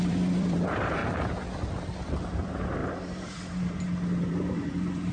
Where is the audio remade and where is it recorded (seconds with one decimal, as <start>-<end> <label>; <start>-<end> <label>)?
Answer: 0.0-1.0 remade; 1.0-2.3 recorded; 2.3-5.1 remade